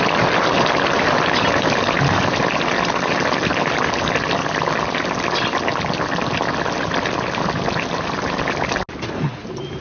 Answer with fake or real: real